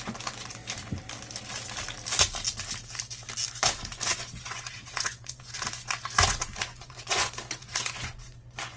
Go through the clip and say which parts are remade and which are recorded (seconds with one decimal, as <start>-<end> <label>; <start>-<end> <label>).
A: 0.0-0.6 remade; 0.6-3.5 recorded; 3.5-8.8 remade